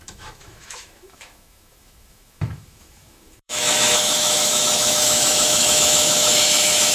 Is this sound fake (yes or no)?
yes